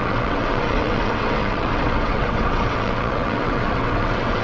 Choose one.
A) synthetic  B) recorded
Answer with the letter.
A